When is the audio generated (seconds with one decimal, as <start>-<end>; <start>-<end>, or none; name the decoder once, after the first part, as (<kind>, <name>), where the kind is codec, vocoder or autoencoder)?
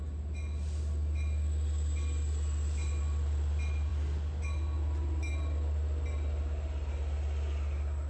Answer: none